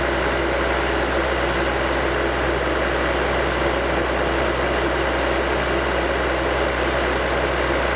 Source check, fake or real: real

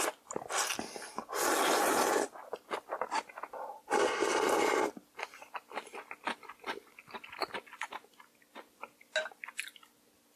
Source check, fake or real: real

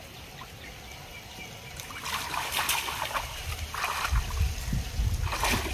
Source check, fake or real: real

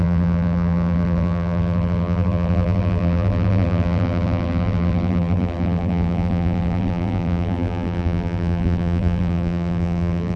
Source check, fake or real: fake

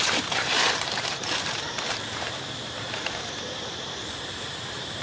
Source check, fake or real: fake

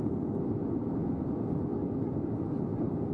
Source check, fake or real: real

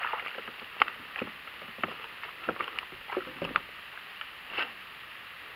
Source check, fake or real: real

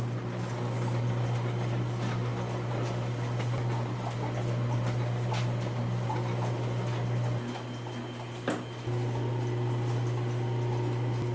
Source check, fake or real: real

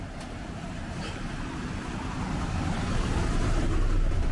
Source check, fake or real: fake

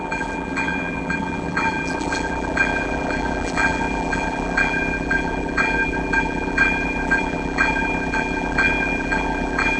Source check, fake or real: fake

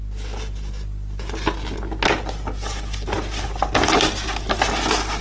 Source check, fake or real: real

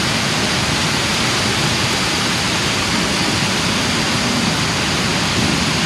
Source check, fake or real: real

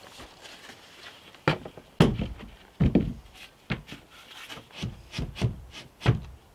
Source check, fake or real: real